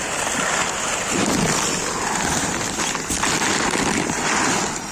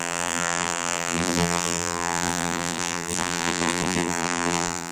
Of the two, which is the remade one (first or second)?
second